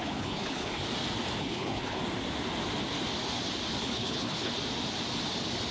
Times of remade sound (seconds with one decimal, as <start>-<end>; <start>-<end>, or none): 0.0-0.8; 1.4-2.0; 3.8-4.5